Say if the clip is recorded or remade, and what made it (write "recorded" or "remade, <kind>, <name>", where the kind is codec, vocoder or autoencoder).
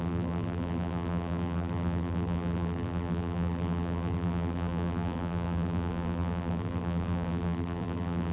remade, vocoder, BigVGAN v2